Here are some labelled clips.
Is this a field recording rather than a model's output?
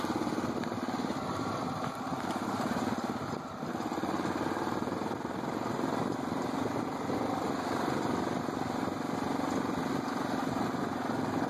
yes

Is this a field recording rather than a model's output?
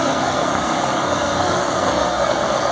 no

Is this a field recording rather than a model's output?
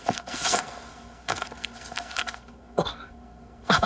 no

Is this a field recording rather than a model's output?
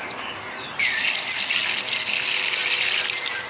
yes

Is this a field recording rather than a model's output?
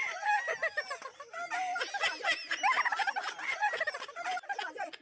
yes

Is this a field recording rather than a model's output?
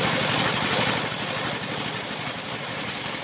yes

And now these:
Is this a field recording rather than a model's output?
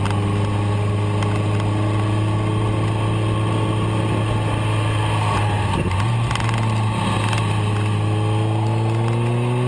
yes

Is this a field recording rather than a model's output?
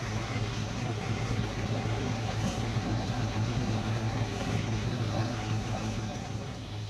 no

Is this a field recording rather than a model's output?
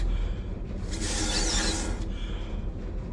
yes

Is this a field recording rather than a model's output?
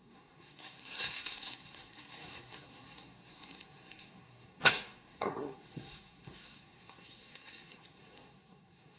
no